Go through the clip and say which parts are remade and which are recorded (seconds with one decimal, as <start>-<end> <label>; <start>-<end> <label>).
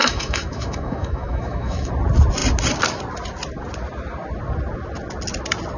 0.0-1.9 remade; 1.9-5.8 recorded